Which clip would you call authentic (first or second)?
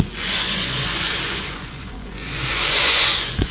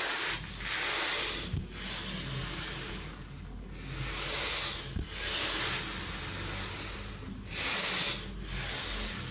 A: second